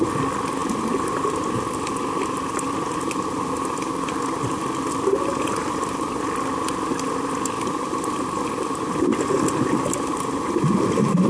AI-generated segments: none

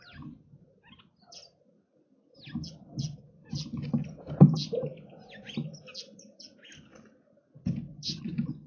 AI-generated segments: none

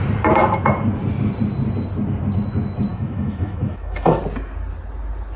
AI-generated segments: 2.9-4.2 (autoencoder, DAC-VAE)

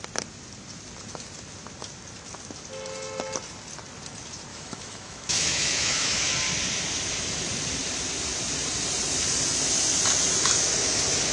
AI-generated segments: 4.5-6.3 (autoencoder, DAC-VAE)

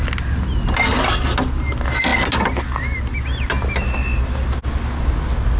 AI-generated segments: none